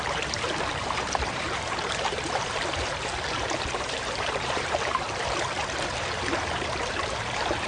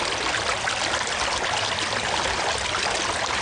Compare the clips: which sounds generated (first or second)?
first